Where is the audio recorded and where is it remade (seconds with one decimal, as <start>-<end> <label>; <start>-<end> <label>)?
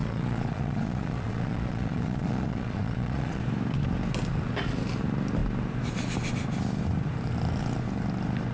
0.0-3.4 remade; 3.4-8.5 recorded